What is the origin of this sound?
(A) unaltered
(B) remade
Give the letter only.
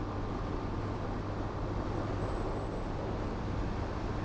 A